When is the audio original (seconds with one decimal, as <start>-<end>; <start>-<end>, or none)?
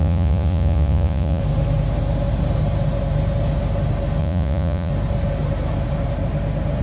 1.4-4.2; 4.9-6.8